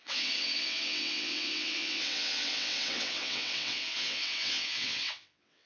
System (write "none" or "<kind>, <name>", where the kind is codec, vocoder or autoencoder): vocoder, WaveNeXt